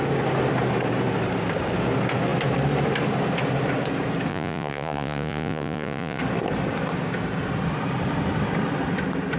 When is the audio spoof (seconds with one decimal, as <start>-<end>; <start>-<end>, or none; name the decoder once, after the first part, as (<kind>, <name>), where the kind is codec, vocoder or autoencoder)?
4.3-6.2 (vocoder, Vocos)